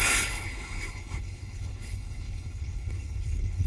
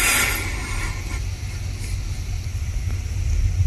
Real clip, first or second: second